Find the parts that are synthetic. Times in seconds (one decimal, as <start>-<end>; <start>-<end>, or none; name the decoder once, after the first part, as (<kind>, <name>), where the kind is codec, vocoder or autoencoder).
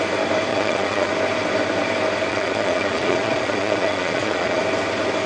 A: 0.5-1.1 (vocoder, Vocos); 2.3-4.6